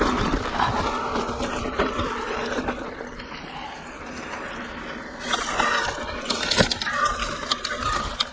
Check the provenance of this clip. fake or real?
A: fake